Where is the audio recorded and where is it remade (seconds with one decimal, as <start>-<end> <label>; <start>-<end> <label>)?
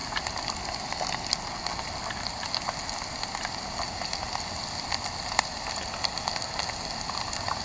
0.0-7.6 recorded